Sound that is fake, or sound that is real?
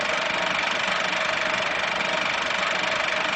real